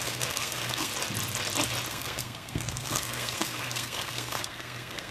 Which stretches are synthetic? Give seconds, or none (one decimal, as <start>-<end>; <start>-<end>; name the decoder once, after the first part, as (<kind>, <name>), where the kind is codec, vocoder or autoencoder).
0.0-0.9 (codec, SNAC); 1.9-5.1